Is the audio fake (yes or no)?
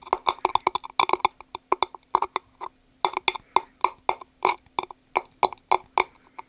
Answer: no